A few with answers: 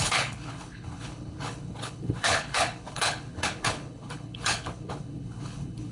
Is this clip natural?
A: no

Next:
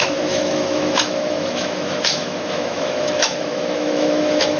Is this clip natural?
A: no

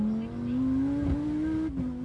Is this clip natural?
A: yes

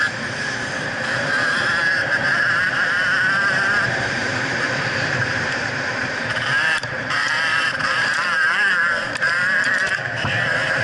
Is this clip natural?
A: no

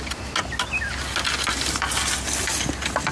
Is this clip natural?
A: yes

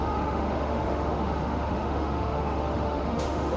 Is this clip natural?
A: no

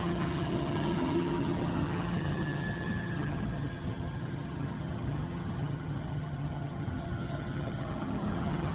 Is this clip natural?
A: no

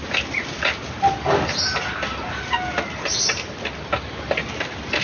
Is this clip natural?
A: yes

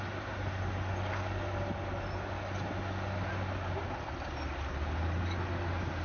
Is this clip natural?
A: yes